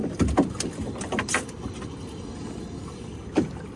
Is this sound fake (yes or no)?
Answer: no